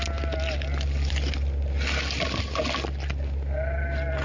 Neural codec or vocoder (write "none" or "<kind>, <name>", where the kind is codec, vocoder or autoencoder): none